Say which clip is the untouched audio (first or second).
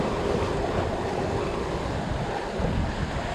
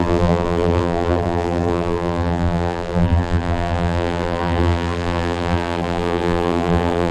first